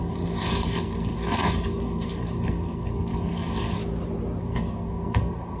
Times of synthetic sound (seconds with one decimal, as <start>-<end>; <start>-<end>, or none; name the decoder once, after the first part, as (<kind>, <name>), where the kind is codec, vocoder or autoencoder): 0.0-3.8 (codec, SNAC); 4.4-5.6